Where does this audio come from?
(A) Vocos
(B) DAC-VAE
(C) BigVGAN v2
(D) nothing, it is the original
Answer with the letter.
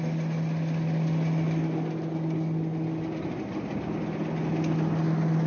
D